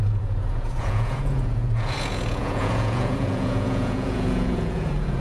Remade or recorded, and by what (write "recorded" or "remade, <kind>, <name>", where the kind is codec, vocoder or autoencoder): remade, vocoder, Vocos